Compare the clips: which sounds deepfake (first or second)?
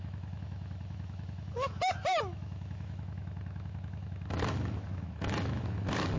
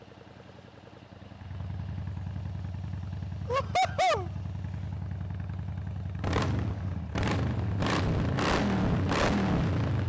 first